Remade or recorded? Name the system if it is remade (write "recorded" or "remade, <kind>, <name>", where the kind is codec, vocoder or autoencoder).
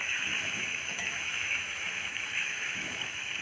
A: remade, autoencoder, DAC-VAE